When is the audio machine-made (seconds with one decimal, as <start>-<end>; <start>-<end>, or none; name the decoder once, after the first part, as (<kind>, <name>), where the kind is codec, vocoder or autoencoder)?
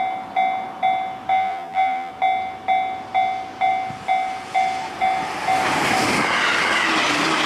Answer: 1.3-2.1 (vocoder, BigVGAN v2)